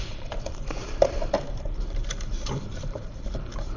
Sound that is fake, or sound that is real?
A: fake